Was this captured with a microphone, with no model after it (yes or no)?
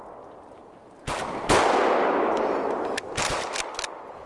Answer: yes